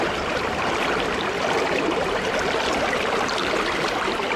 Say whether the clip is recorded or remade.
remade